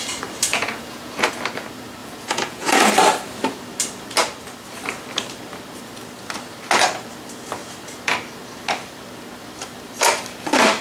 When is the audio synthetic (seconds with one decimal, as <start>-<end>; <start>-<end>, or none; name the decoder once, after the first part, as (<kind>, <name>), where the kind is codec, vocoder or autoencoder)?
0.5-1.3 (vocoder, Vocos); 2.0-2.9